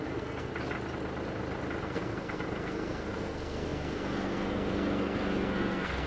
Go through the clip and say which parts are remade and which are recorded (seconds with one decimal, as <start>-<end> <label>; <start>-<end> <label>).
0.0-0.5 remade; 0.5-1.8 recorded; 1.8-6.1 remade